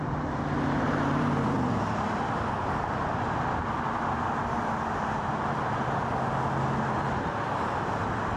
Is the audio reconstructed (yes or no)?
yes